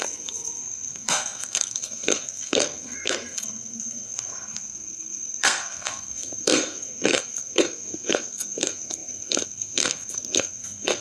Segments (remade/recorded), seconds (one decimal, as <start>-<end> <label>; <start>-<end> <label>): 0.0-11.0 remade